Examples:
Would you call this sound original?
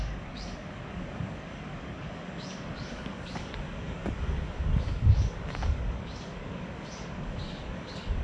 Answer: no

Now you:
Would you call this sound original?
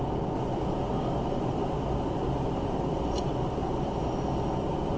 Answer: yes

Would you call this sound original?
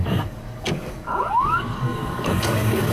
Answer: no